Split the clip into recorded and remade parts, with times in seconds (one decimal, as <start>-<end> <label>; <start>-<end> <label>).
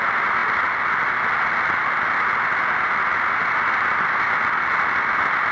0.0-5.5 recorded